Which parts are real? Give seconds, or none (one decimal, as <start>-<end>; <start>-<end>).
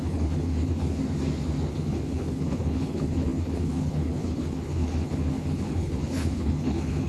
1.0-1.7